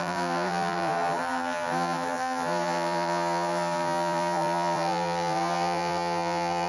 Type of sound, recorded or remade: remade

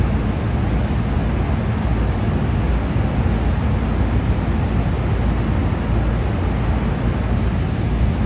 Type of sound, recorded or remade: recorded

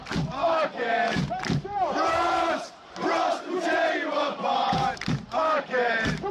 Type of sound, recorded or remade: remade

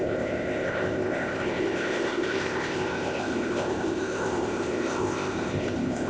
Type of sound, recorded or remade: remade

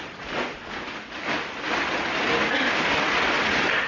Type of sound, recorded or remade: recorded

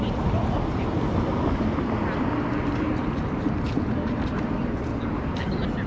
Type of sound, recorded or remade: recorded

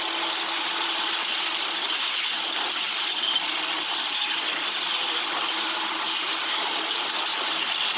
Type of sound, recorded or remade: recorded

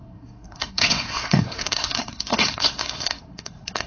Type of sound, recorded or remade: remade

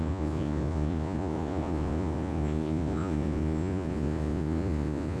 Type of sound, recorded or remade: remade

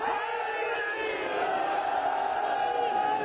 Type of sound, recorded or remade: recorded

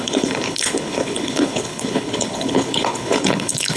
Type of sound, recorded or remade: remade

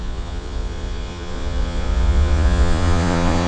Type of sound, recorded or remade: remade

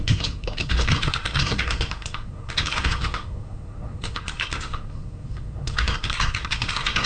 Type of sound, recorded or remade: remade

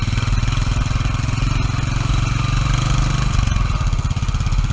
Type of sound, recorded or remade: recorded